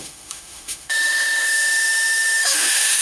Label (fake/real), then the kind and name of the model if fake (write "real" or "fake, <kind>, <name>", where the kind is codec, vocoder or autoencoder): fake, autoencoder, DAC-VAE